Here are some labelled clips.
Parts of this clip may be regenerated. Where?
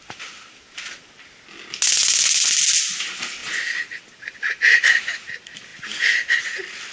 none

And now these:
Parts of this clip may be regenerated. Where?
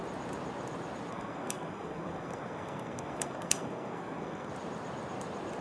1.1-4.5 (codec, SNAC)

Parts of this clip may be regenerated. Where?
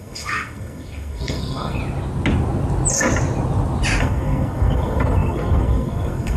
0.0-1.8 (codec, SNAC); 4.0-6.4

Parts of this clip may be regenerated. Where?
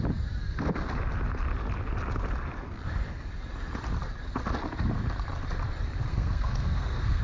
6.1-7.2 (codec, SNAC)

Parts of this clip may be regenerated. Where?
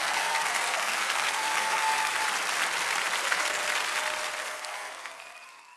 0.0-2.1 (codec, SNAC); 3.2-3.6; 4.4-5.8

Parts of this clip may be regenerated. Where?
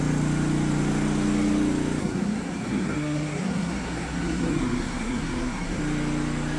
2.0-5.8 (codec, SNAC)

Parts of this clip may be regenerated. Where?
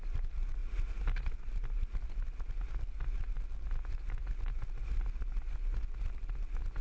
none